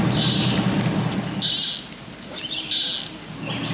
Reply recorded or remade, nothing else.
recorded